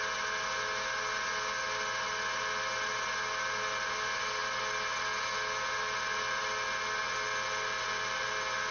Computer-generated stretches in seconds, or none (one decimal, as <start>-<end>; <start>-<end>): none